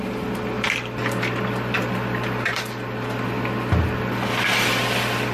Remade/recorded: recorded